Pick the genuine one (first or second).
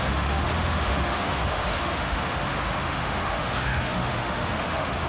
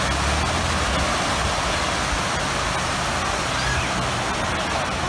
second